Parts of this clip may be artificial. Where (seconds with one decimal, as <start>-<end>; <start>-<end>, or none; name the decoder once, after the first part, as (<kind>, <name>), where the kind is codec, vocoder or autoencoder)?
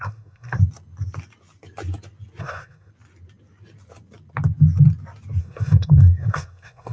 0.0-0.6 (codec, SNAC); 2.4-2.9; 5.4-6.9